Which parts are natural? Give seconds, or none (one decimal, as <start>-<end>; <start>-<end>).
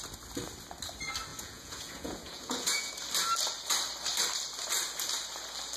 0.0-1.3; 2.9-5.8